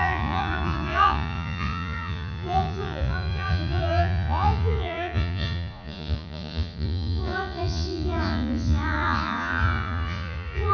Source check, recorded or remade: remade